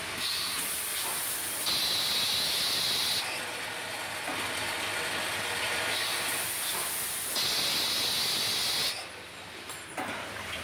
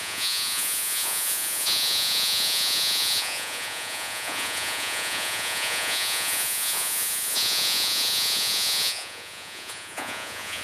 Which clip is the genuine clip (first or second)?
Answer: first